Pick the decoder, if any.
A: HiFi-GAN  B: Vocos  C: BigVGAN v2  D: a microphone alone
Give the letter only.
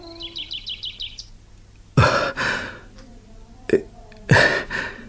D